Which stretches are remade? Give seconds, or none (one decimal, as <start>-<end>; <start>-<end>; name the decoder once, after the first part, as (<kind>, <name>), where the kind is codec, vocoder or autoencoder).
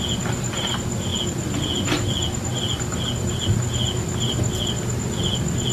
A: none